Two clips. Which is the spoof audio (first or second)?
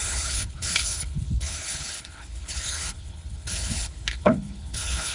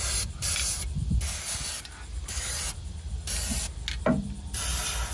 first